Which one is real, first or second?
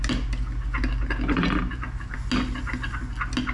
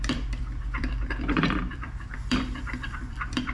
first